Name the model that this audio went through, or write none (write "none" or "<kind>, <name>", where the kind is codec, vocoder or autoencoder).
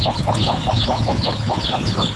codec, HILCodec